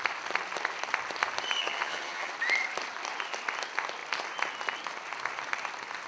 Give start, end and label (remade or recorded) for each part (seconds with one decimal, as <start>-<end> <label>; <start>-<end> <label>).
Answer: 0.0-1.6 recorded; 1.6-2.3 remade; 2.3-6.1 recorded